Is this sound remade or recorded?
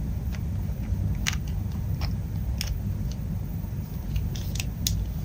recorded